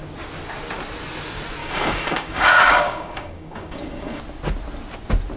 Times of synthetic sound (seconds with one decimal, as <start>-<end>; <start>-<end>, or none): 1.6-4.2